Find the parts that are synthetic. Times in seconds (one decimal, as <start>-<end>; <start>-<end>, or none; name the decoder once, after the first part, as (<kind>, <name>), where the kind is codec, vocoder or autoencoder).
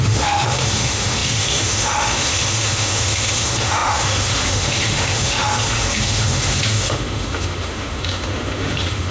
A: 0.0-9.1 (autoencoder, DAC-VAE)